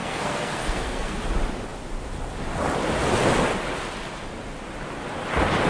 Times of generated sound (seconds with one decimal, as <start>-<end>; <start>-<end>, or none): 0.0-1.2